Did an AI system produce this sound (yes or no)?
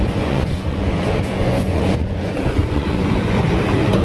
yes